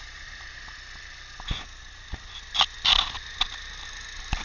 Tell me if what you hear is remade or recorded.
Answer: recorded